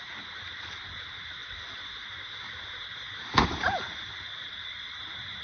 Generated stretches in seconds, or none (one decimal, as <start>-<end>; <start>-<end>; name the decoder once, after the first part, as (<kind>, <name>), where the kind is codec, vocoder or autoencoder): 0.0-5.4 (vocoder, BigVGAN v2)